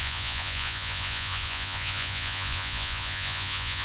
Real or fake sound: fake